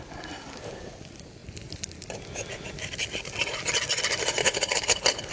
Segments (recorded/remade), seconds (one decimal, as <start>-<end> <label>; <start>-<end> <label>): 0.0-4.4 recorded; 4.4-5.3 remade